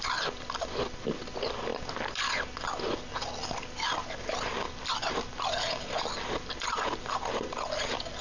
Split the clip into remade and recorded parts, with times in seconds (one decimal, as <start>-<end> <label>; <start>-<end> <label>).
0.0-8.2 recorded